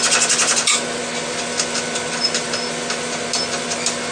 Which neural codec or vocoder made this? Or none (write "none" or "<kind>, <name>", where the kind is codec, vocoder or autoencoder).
none